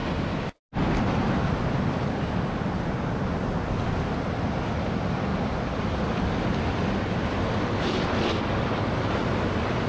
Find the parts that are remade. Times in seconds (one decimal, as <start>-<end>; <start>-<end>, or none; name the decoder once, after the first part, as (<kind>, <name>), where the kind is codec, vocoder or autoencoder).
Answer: none